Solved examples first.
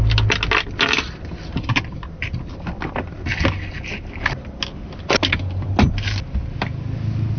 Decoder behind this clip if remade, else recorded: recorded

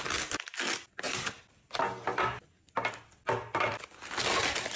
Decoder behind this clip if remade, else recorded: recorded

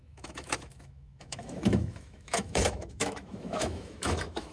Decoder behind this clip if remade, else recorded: remade, autoencoder, DAC-VAE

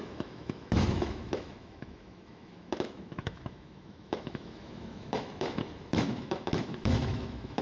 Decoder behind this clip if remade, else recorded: remade, autoencoder, DAC-VAE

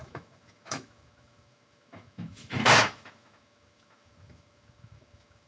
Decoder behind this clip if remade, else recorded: remade, autoencoder, DAC-VAE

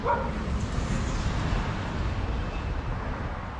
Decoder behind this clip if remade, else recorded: recorded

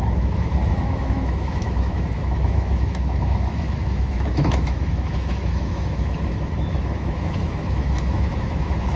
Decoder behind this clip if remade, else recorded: remade, autoencoder, DAC-VAE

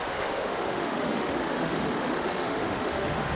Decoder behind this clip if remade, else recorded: remade, autoencoder, DAC-VAE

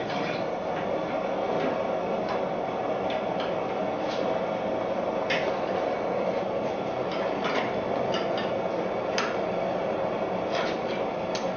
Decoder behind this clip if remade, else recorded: recorded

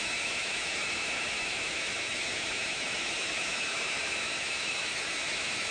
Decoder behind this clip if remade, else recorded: remade, autoencoder, DAC-VAE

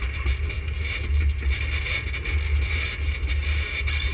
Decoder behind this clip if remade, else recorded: recorded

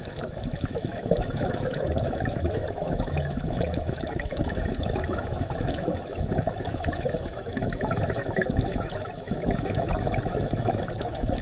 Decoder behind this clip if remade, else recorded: remade, autoencoder, DAC-VAE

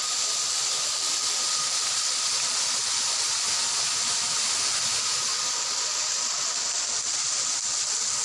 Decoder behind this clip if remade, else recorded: recorded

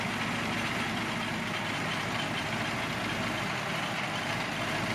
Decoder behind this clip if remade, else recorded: recorded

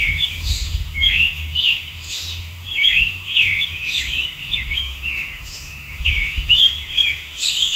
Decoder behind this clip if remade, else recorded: remade, autoencoder, DAC-VAE